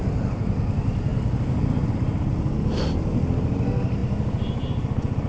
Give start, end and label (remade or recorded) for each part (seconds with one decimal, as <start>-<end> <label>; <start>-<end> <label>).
0.0-5.3 recorded